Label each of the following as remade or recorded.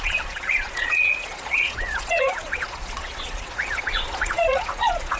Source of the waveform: remade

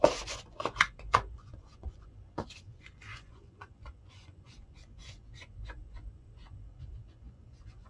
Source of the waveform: remade